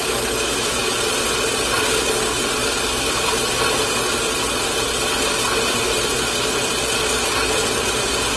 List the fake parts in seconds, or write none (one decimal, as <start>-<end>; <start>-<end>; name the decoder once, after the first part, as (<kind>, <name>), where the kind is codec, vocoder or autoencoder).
0.0-0.8 (autoencoder, DAC-VAE)

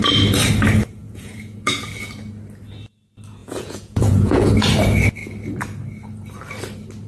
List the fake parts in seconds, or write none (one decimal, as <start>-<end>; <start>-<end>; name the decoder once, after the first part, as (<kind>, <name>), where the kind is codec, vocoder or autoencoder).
1.0-1.8 (vocoder, Vocos); 3.4-4.5

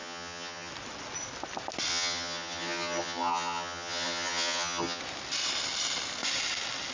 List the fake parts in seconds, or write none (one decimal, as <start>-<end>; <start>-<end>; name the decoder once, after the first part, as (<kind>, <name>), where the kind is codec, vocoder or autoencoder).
0.0-0.7 (vocoder, HiFi-GAN); 1.9-5.0

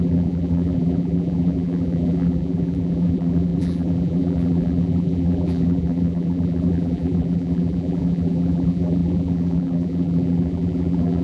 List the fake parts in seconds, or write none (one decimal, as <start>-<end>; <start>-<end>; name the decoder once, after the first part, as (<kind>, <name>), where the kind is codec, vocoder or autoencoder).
0.0-11.2 (vocoder, BigVGAN v2)

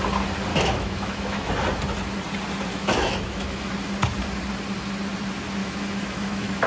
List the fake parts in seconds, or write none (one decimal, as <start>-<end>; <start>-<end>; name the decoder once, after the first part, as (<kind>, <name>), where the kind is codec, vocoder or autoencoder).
0.5-1.5 (autoencoder, DAC-VAE); 2.7-3.7; 5.6-6.7

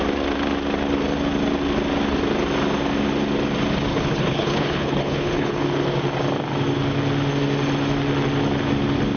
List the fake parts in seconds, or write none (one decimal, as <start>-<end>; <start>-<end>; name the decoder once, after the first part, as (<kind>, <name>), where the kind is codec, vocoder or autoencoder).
3.9-5.6 (codec, HILCodec)